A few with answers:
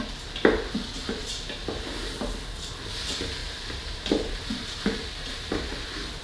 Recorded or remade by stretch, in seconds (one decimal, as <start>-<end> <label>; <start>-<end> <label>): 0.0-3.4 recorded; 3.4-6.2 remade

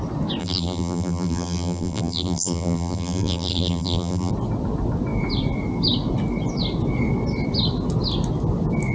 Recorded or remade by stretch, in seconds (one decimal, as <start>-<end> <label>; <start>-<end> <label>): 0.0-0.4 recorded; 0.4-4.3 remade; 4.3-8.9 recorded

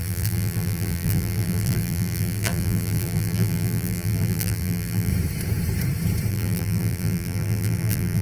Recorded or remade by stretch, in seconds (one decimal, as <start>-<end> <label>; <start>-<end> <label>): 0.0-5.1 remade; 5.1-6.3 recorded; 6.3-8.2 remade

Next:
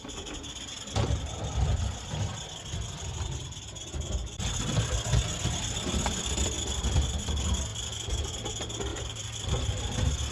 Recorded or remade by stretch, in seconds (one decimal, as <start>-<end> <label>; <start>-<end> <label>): 0.0-10.3 remade

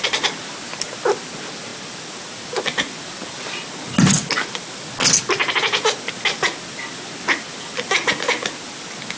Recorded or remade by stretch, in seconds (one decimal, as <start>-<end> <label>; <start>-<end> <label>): 0.0-9.2 recorded

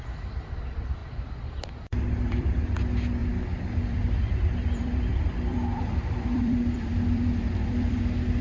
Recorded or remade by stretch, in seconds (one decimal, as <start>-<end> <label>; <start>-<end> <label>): 0.0-1.0 recorded; 1.0-2.7 remade; 2.7-3.2 recorded; 3.2-8.0 remade; 8.0-8.4 recorded

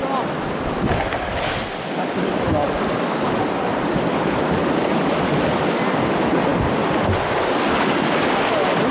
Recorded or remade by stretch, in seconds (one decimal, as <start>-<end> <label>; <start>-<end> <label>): 0.0-3.7 recorded; 3.7-5.5 remade; 5.5-8.9 recorded